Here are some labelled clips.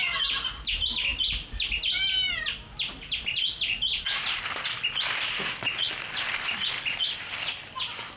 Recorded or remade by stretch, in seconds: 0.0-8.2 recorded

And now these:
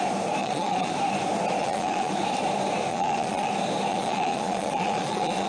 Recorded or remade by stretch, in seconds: 0.0-0.4 recorded; 0.4-0.9 remade; 0.9-1.6 recorded; 1.6-2.1 remade; 2.1-2.9 recorded; 2.9-3.5 remade; 3.5-3.9 recorded; 3.9-5.5 remade

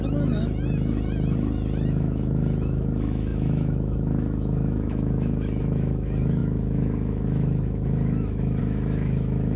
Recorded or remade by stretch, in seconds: 0.0-9.6 remade

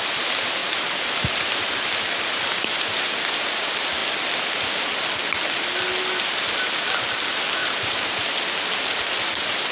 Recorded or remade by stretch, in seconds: 0.0-0.6 recorded; 0.6-3.3 remade; 3.3-7.6 recorded; 7.6-8.3 remade; 8.3-9.7 recorded

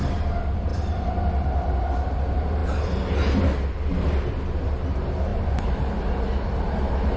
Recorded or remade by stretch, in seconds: 0.0-7.2 recorded

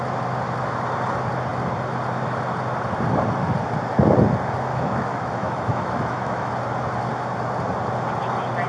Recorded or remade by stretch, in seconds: 0.0-4.7 recorded; 4.7-6.5 remade; 6.5-8.7 recorded

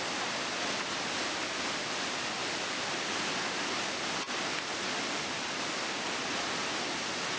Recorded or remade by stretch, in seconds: 0.0-2.4 recorded; 2.4-3.0 remade; 3.0-7.4 recorded